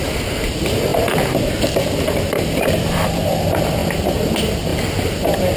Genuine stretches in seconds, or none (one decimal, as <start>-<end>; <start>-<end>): 0.9-2.0; 4.7-5.6